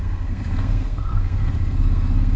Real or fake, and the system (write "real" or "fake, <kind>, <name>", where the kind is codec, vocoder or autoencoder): fake, codec, SNAC